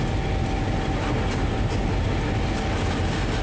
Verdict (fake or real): real